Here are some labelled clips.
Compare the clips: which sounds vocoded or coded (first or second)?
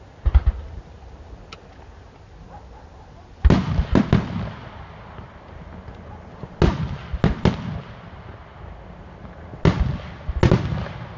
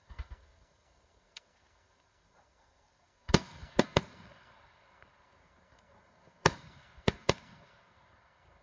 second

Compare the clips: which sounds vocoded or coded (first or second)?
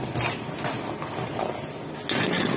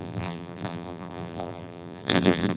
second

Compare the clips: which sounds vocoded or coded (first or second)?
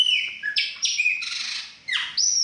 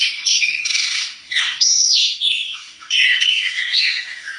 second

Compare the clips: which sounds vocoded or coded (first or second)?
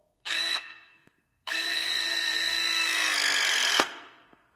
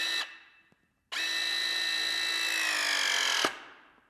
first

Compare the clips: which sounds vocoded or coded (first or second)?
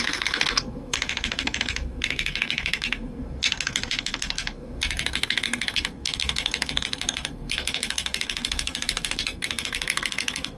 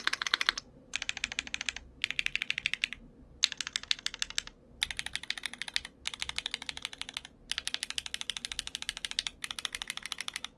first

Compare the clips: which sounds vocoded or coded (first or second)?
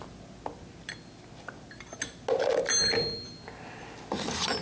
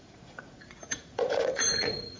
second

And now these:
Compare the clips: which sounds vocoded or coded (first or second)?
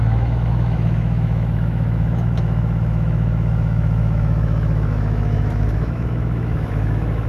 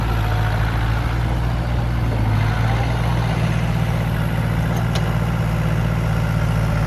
first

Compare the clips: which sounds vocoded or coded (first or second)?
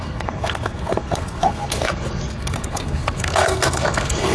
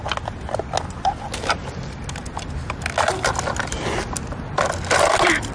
first